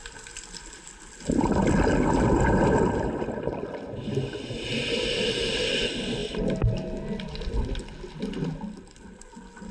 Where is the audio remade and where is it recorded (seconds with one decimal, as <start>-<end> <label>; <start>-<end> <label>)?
0.0-9.7 recorded

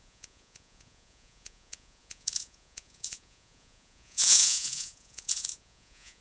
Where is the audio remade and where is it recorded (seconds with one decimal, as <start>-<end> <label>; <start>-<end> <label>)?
0.0-6.2 remade